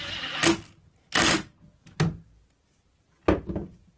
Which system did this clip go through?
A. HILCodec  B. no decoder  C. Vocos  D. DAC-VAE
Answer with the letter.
B